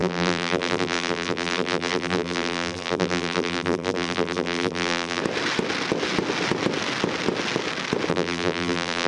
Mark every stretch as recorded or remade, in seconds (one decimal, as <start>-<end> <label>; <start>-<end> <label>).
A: 0.0-5.2 remade; 5.2-8.1 recorded; 8.1-9.1 remade